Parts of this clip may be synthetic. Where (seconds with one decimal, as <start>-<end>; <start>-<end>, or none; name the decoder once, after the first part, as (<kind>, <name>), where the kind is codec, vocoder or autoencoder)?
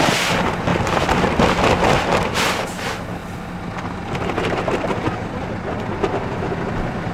none